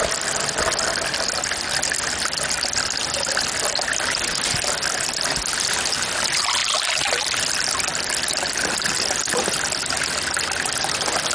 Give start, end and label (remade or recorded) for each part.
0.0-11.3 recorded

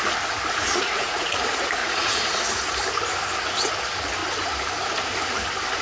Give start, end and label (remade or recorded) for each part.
0.0-0.7 recorded; 0.7-1.3 remade; 1.3-1.8 recorded; 1.8-2.4 remade; 2.4-5.8 recorded

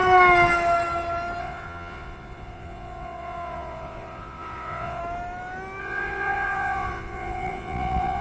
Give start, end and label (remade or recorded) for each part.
0.0-1.4 recorded; 1.4-5.0 remade; 5.0-5.8 recorded; 5.8-8.2 remade

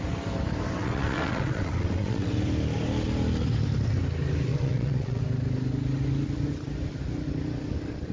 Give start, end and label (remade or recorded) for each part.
0.0-0.8 recorded; 0.8-2.3 remade; 2.3-4.5 recorded; 4.5-5.2 remade; 5.2-8.1 recorded

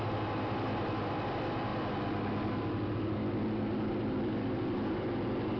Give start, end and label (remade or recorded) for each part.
0.0-5.6 recorded